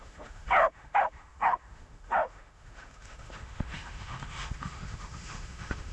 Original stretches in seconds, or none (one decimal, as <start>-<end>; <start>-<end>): none